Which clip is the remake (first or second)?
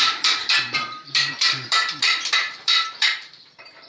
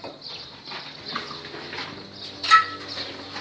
first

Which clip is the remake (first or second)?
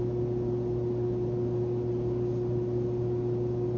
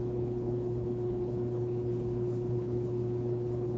second